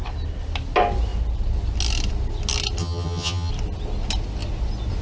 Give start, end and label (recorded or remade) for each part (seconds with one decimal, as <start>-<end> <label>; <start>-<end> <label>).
0.0-2.8 recorded; 2.8-3.5 remade; 3.5-5.0 recorded